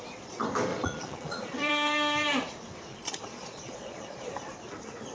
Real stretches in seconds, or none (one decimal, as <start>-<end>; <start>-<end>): 0.0-0.7; 1.7-2.9; 4.3-5.1